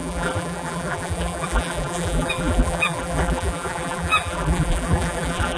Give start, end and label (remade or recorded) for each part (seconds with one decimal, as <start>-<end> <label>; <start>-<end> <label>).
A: 0.0-5.6 remade